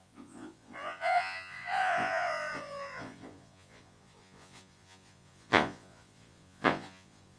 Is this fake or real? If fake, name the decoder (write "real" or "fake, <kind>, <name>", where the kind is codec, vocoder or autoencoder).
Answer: fake, vocoder, Vocos